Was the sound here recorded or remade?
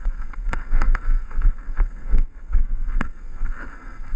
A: remade